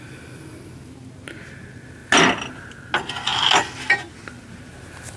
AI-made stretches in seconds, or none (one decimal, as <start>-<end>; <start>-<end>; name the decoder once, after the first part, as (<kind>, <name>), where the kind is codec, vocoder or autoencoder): none